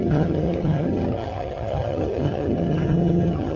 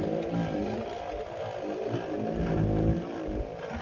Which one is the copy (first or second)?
first